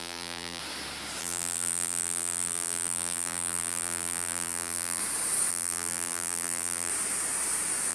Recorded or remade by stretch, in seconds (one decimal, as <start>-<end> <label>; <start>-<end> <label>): 0.0-0.6 remade; 0.6-1.2 recorded; 1.2-5.0 remade; 5.0-5.5 recorded; 5.5-6.9 remade; 6.9-7.9 recorded